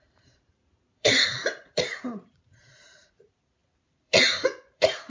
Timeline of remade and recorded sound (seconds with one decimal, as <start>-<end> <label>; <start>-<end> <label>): 0.0-5.1 remade